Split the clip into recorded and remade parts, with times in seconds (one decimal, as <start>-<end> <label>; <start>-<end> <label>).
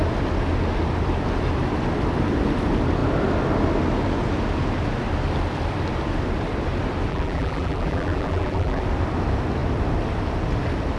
0.0-7.1 recorded; 7.1-8.8 remade; 8.8-11.0 recorded